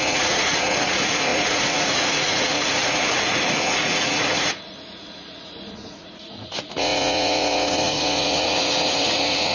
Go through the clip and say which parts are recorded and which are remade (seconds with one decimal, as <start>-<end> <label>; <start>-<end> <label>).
0.0-9.5 remade